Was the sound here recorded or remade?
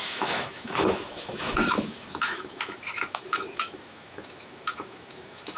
remade